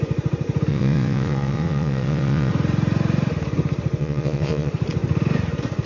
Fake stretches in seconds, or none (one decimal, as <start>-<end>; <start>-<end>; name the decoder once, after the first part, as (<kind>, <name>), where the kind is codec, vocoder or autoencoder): 0.7-2.5 (vocoder, WaveNeXt); 4.0-4.7